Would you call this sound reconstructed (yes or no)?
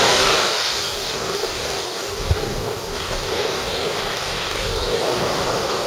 yes